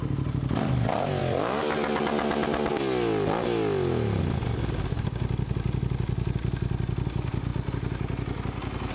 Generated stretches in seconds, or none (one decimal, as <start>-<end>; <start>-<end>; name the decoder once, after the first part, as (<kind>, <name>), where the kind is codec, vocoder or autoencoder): none